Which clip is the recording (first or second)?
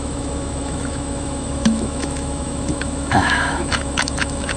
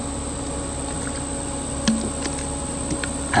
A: second